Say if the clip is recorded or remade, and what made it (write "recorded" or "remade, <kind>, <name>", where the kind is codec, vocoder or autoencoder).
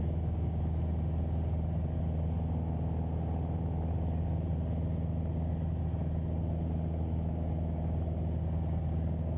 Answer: recorded